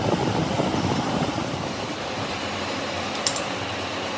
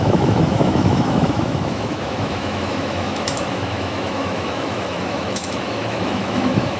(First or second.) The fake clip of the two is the second